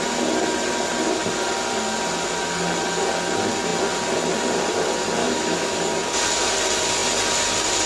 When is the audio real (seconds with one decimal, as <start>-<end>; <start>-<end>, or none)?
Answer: 0.0-5.2; 5.8-7.9